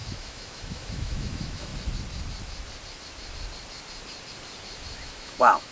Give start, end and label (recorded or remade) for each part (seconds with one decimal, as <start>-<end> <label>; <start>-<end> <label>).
0.0-1.7 remade; 1.7-5.1 recorded; 5.1-5.7 remade